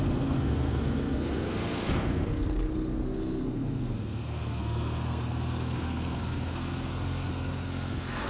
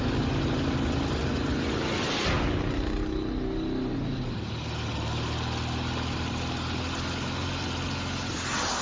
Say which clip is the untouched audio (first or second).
second